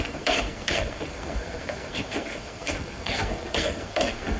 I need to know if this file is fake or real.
fake